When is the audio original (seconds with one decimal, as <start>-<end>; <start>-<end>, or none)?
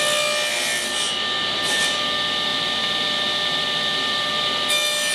0.0-2.5; 4.3-5.1